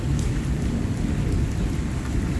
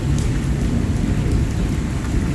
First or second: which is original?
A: second